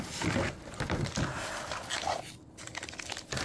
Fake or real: real